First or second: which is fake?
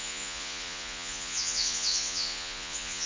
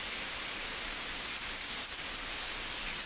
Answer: first